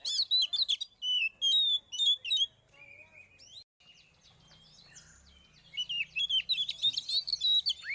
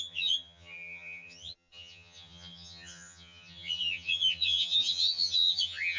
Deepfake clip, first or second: second